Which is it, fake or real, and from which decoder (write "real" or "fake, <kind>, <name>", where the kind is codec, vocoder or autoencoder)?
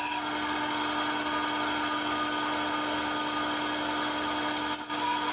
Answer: real